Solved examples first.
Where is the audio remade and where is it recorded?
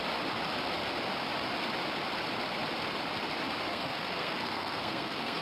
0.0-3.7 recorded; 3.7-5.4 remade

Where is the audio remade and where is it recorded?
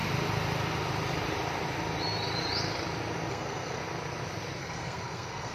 0.0-3.3 recorded; 3.3-3.8 remade; 3.8-4.6 recorded; 4.6-5.5 remade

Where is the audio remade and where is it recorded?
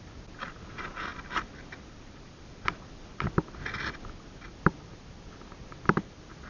0.0-6.5 recorded